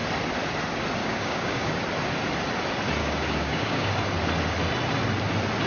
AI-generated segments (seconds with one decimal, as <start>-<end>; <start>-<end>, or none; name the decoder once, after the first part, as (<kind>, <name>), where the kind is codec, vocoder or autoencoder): 1.0-1.8 (codec, DAC); 3.0-3.9